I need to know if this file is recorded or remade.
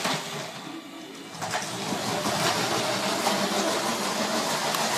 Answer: recorded